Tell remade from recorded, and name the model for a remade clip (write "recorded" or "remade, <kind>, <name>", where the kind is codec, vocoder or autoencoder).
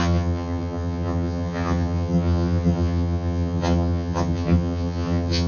remade, vocoder, HiFi-GAN